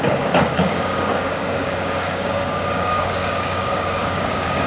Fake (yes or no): yes